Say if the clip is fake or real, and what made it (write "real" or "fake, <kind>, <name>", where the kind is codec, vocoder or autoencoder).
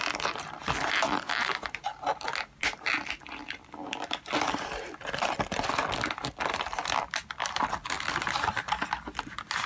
real